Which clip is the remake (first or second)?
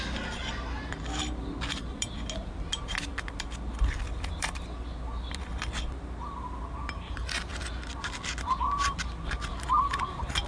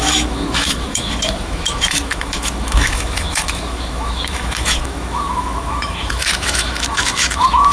second